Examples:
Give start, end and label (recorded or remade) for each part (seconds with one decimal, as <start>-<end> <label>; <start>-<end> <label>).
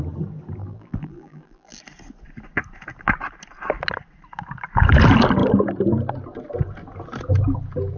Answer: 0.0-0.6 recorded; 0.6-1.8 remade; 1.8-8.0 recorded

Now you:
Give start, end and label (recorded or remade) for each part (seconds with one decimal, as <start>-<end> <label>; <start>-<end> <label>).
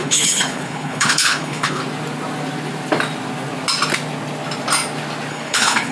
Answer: 0.0-1.8 remade; 1.8-5.3 recorded; 5.3-5.9 remade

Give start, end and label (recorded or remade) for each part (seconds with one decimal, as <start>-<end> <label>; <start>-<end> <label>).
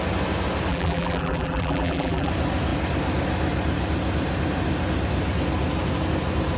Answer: 0.0-0.7 recorded; 0.7-2.3 remade; 2.3-6.6 recorded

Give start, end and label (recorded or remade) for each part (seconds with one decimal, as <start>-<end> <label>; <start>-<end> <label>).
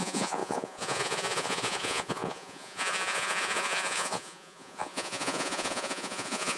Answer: 0.0-6.6 remade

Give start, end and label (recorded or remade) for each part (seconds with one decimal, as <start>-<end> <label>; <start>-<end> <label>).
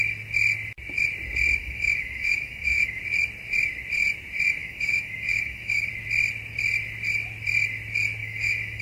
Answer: 0.0-1.6 recorded; 1.6-3.0 remade; 3.0-4.6 recorded; 4.6-5.9 remade; 5.9-8.2 recorded; 8.2-8.8 remade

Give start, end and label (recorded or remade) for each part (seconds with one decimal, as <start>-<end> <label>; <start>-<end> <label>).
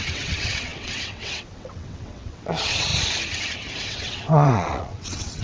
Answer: 0.0-2.9 remade; 2.9-3.8 recorded; 3.8-5.4 remade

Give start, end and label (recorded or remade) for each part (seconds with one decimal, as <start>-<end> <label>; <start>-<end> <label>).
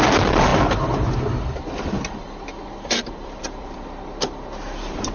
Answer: 0.0-5.1 remade